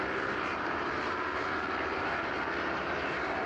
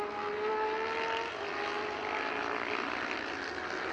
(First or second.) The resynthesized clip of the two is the first